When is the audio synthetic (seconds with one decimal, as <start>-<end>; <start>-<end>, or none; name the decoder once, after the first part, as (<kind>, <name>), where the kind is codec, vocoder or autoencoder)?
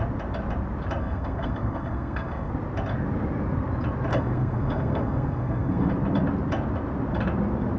1.0-2.5 (codec, SNAC); 4.1-5.9